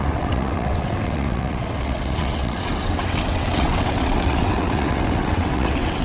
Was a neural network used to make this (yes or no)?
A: yes